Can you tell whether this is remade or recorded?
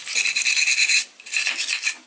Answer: recorded